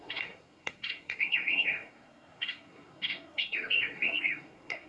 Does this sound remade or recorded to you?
remade